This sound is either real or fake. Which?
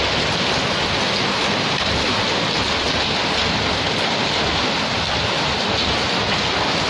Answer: real